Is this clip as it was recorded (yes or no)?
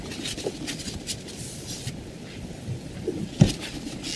no